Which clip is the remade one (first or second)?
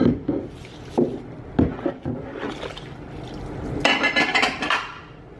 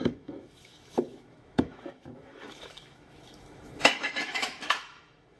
second